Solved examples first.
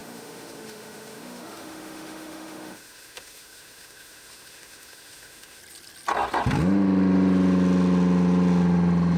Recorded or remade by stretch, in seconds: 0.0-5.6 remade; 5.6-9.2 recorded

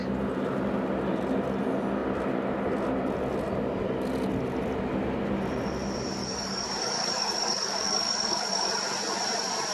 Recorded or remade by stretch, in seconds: 0.0-6.2 recorded; 6.2-8.7 remade; 8.7-9.7 recorded

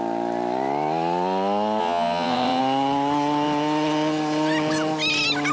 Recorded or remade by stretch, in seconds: 0.0-1.8 recorded; 1.8-2.6 remade; 2.6-5.5 recorded

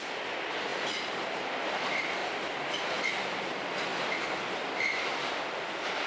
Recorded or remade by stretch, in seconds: 0.0-6.1 remade

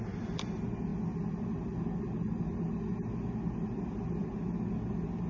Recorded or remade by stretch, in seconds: 0.0-5.3 recorded